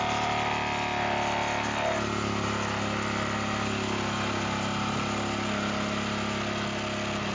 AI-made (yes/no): no